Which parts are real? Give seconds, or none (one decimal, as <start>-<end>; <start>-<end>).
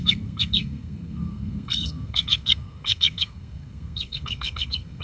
none